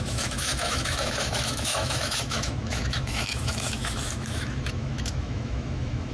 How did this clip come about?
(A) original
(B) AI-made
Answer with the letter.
B